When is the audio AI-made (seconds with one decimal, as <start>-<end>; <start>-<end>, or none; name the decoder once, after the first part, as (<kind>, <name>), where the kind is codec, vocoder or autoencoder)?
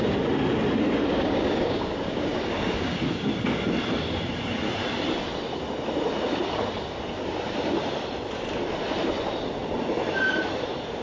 1.1-3.3 (codec, DAC)